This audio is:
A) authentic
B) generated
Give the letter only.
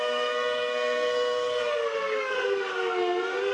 B